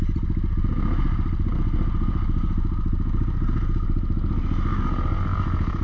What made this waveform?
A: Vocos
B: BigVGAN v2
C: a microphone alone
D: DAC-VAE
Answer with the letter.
C